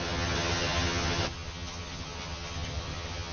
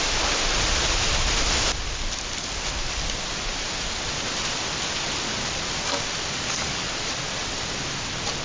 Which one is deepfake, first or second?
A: first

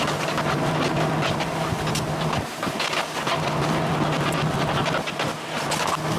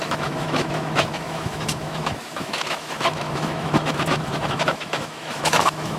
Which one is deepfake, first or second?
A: second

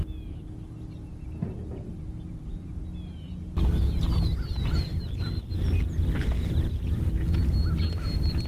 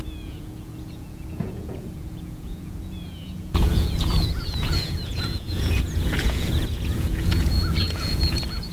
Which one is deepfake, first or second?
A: second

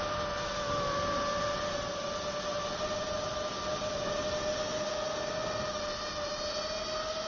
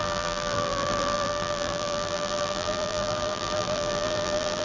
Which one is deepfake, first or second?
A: second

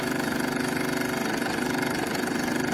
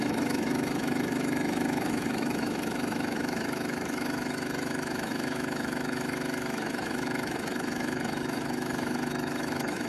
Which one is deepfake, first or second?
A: second